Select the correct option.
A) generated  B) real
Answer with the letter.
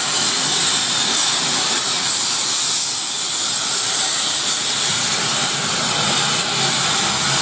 B